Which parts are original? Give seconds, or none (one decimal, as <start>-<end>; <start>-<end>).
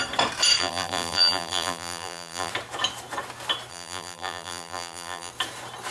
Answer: 0.0-0.6; 2.5-3.7; 5.3-5.9